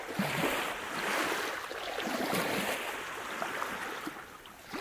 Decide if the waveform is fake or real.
real